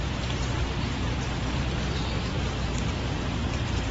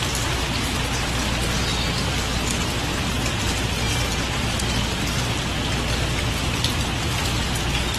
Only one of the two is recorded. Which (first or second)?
second